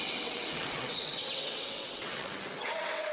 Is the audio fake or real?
fake